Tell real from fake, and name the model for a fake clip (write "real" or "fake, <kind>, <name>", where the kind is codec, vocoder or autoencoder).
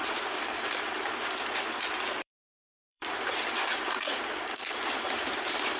fake, vocoder, BigVGAN v2